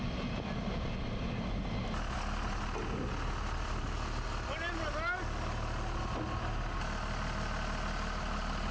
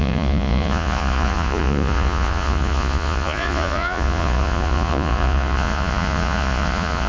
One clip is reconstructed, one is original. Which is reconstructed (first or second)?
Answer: second